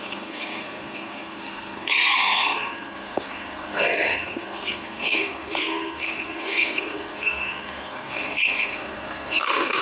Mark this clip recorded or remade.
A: remade